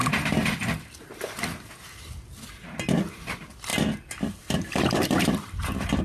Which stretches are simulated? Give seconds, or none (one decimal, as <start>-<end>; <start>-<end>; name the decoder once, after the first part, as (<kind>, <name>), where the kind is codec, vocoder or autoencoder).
0.0-1.7 (vocoder, BigVGAN v2); 3.7-6.0